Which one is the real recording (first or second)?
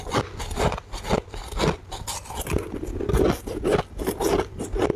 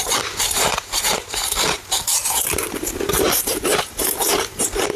first